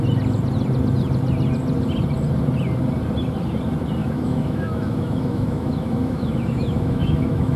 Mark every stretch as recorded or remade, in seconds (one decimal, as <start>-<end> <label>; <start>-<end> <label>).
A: 0.0-4.0 recorded; 4.0-7.6 remade